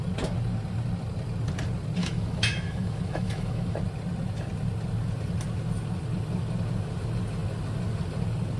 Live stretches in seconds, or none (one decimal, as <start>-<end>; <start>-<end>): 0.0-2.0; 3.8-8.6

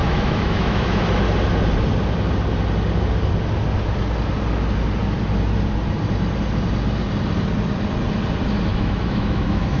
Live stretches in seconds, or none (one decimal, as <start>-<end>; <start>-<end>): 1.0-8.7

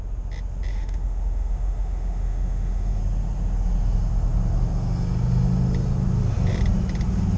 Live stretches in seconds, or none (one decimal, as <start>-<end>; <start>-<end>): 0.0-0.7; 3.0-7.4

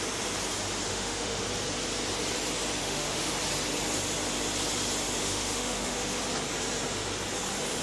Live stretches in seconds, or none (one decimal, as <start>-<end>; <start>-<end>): 0.0-0.9; 1.4-2.8; 3.3-5.2; 6.2-7.8

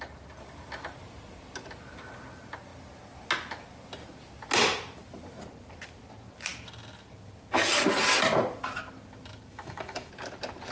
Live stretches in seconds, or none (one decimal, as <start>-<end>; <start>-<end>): 0.0-9.5; 10.1-10.7

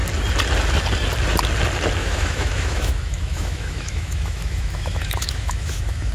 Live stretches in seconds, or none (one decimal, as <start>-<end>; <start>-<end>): 0.0-2.0